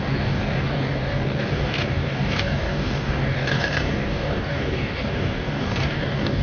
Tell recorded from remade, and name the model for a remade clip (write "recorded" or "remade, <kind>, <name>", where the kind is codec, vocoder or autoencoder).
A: remade, codec, DAC